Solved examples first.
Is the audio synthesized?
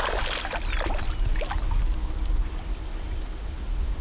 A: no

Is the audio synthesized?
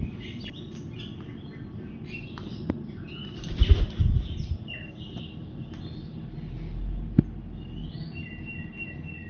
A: no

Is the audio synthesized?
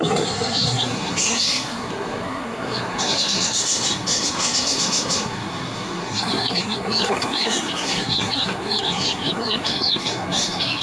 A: yes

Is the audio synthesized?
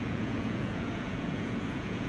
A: yes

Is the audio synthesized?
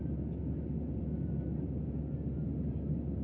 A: no